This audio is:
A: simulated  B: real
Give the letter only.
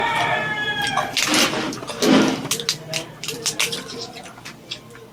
B